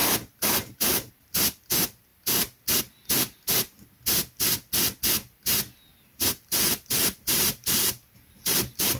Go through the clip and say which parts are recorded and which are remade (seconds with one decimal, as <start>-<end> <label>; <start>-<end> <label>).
0.0-1.1 remade; 1.1-5.9 recorded; 5.9-9.0 remade